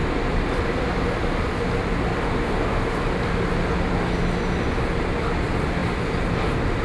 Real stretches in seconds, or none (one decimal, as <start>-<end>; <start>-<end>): 0.0-6.8